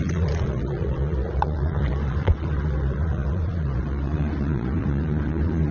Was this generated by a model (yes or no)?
yes